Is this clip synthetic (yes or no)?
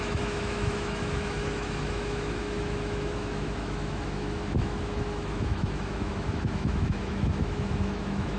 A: yes